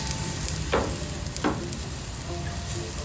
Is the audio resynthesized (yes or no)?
no